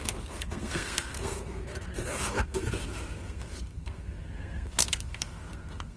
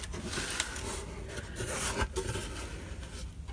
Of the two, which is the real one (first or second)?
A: second